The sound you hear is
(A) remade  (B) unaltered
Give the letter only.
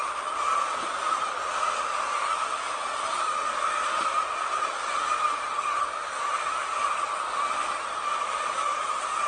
B